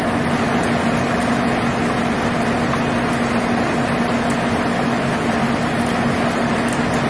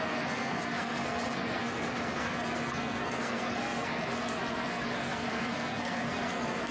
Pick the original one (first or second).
first